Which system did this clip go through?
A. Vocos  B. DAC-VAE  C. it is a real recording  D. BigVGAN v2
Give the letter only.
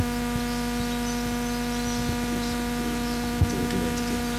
C